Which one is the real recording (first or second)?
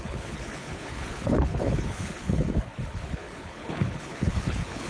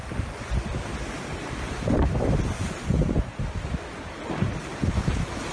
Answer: second